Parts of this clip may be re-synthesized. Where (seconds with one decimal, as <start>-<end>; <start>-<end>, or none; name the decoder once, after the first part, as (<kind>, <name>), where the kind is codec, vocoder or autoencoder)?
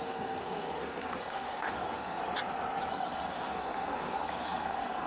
0.0-2.2 (codec, SNAC); 2.9-5.1